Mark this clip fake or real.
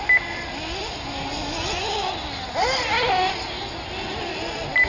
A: real